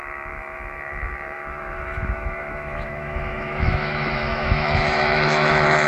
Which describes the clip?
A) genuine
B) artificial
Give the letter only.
B